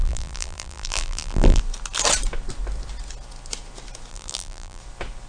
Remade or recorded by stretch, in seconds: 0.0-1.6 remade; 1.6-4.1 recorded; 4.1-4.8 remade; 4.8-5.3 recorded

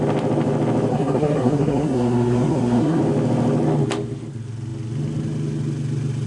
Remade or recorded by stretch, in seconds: 0.0-0.9 recorded; 0.9-3.0 remade; 3.0-6.3 recorded